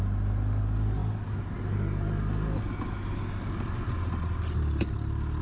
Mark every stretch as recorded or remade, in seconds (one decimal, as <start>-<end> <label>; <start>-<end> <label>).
0.0-5.4 recorded